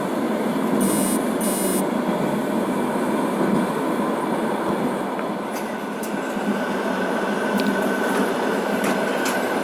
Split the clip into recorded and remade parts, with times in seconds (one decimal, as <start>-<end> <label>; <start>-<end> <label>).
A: 0.0-9.6 recorded